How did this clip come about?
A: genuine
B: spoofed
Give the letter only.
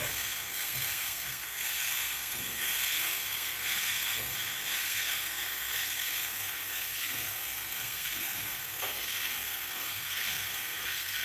B